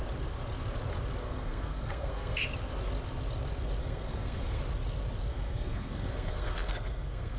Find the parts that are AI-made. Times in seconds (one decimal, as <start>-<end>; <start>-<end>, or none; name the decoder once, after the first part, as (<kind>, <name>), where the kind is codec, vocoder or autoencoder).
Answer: 1.2-2.4 (codec, SNAC); 3.8-4.6; 5.3-7.4